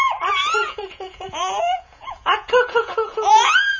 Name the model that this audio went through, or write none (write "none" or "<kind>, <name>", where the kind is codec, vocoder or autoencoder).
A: vocoder, Vocos